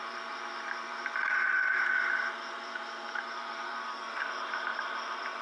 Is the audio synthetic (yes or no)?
yes